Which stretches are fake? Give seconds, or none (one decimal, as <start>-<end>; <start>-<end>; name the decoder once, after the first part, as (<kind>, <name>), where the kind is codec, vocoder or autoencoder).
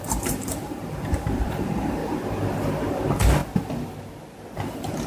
0.0-2.0 (vocoder, BigVGAN v2); 2.9-3.4; 4.6-5.1